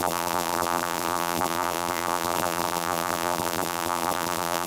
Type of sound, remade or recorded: remade